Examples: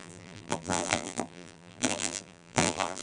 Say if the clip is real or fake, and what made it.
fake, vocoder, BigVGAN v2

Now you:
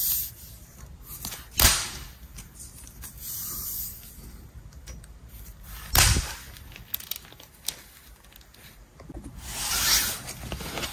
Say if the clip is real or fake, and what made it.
real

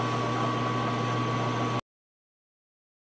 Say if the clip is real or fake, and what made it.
real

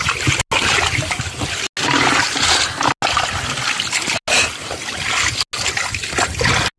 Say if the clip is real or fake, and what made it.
real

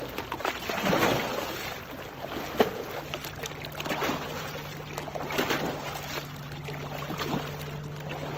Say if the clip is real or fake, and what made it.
real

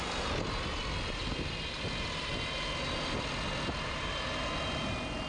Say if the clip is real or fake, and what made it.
real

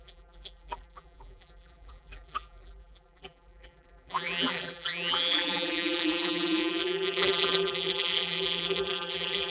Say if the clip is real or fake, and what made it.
fake, vocoder, BigVGAN v2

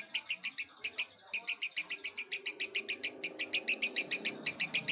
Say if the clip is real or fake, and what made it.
real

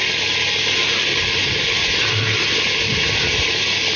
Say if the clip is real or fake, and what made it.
real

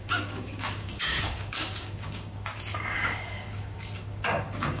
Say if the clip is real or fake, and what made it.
fake, codec, DAC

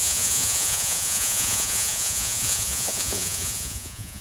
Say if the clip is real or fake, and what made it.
fake, vocoder, Vocos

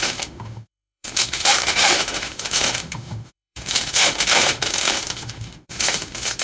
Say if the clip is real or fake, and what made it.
fake, autoencoder, DAC-VAE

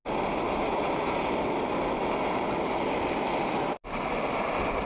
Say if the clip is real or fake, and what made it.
real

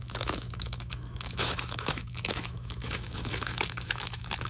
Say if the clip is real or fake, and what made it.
fake, autoencoder, DAC-VAE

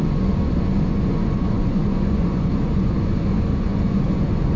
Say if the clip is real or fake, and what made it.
fake, vocoder, Vocos